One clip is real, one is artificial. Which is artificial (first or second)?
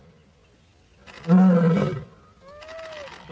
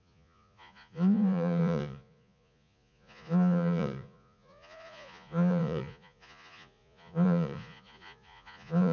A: second